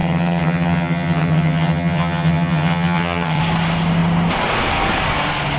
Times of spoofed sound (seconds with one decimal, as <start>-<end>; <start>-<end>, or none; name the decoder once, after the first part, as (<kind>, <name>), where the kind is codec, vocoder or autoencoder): 0.0-3.4 (vocoder, HiFi-GAN)